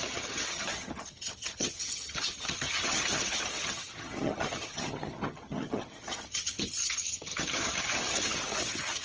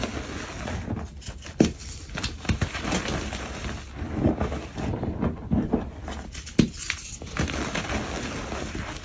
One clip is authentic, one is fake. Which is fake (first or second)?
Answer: first